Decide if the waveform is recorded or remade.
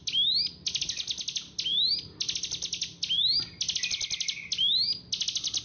recorded